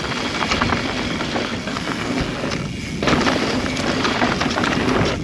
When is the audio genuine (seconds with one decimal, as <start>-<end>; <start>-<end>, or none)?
0.0-1.6; 2.2-5.2